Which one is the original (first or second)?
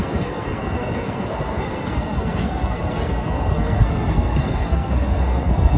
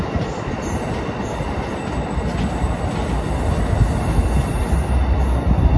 second